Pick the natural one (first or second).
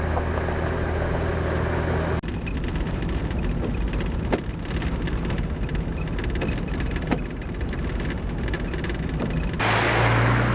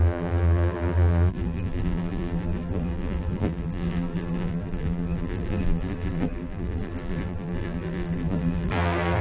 first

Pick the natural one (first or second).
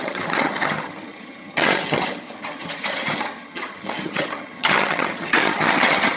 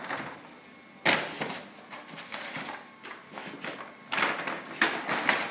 second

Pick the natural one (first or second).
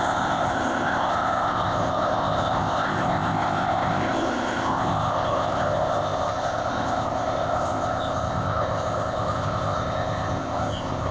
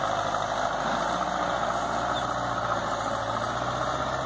second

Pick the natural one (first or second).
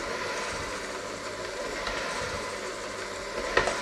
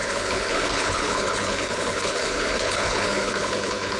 first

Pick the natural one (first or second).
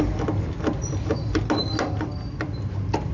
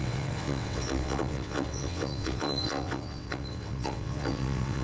first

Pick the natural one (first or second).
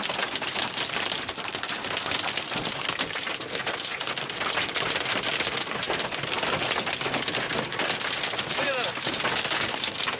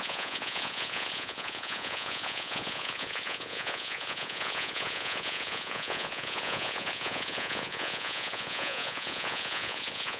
first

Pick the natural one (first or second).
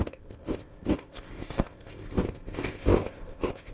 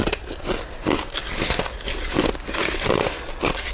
second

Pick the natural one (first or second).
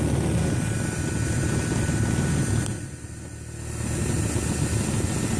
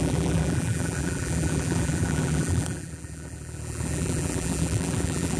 first